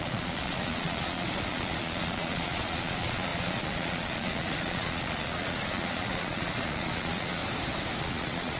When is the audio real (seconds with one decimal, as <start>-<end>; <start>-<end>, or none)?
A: 7.4-8.0